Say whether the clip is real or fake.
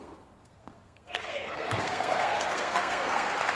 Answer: fake